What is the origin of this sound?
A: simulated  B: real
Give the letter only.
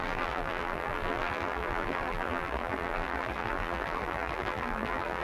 A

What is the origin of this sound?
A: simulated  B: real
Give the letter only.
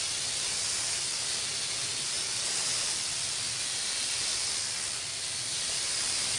B